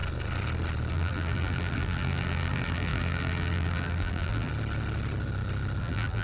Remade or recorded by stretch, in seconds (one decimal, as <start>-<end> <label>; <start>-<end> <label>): 0.0-0.9 recorded; 0.9-4.5 remade; 4.5-5.8 recorded; 5.8-6.2 remade